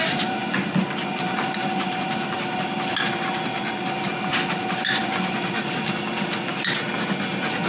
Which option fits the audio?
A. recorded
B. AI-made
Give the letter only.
A